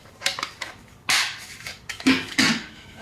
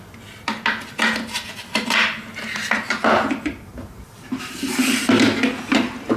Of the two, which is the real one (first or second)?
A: second